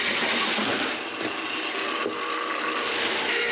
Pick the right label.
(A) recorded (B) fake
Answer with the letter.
A